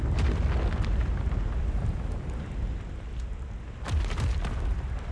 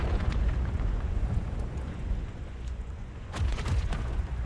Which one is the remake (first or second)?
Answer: second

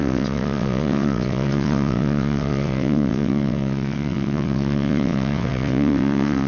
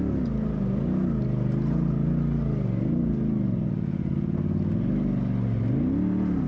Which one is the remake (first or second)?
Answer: first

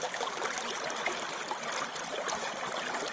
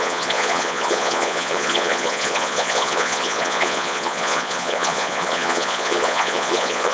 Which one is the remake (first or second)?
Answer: second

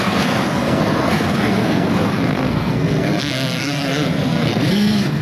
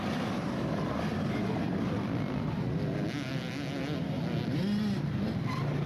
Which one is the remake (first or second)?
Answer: first